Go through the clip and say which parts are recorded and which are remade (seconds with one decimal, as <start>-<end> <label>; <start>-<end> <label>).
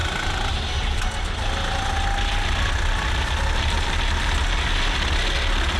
0.0-5.8 recorded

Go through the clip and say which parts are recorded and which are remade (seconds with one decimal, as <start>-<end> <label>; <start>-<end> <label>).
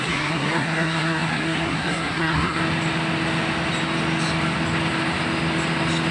0.0-2.6 remade; 2.6-6.1 recorded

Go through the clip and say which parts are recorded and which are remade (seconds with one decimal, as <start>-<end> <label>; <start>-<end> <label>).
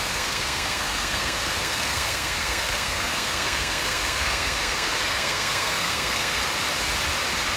0.0-6.4 remade; 6.4-7.6 recorded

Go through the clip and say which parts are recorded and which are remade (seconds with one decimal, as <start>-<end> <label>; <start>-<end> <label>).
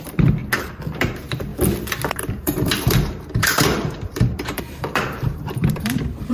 0.0-0.4 remade; 0.4-1.0 recorded; 1.0-1.5 remade; 1.5-2.1 recorded; 2.1-6.3 remade